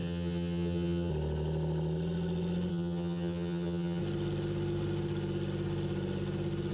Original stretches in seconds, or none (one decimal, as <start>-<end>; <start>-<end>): 1.1-2.7; 4.0-6.7